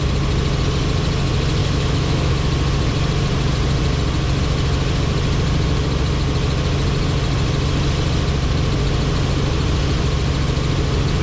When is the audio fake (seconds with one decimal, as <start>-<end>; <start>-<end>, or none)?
1.6-2.3